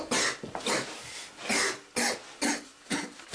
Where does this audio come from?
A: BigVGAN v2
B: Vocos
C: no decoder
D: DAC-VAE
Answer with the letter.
C